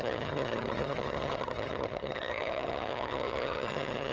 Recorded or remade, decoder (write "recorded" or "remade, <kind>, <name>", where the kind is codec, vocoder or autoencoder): remade, vocoder, HiFi-GAN